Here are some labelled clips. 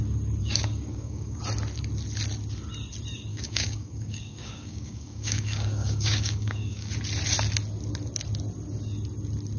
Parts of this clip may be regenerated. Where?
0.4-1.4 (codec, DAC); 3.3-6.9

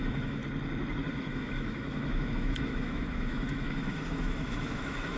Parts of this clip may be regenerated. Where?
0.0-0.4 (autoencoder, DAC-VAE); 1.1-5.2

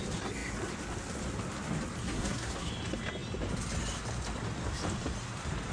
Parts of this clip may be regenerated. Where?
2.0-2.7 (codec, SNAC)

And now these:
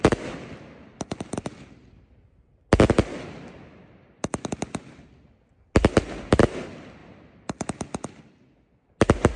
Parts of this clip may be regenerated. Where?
none

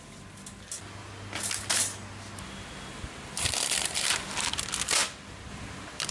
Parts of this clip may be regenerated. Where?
none

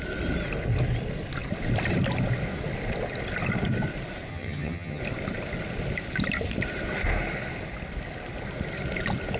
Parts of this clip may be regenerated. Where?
4.3-5.0 (vocoder, HiFi-GAN)

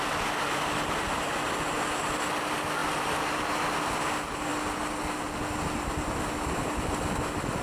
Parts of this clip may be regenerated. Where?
none